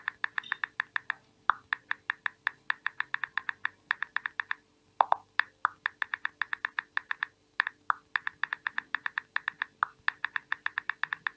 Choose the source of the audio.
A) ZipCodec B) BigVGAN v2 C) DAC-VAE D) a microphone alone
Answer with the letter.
D